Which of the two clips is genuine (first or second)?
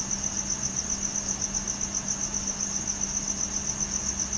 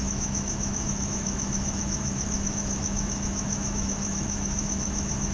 first